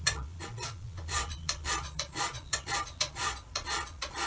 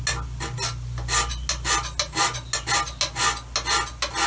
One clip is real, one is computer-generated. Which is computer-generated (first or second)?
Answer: first